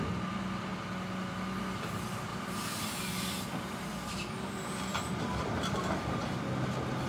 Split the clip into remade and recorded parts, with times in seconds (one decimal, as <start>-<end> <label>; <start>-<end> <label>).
0.0-2.3 recorded; 2.3-2.9 remade; 2.9-4.9 recorded; 4.9-6.4 remade; 6.4-7.1 recorded